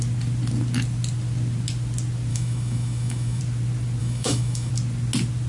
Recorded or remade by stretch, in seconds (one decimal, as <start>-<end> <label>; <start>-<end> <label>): 0.0-2.3 recorded; 2.3-3.4 remade; 3.4-4.0 recorded; 4.0-4.7 remade; 4.7-5.5 recorded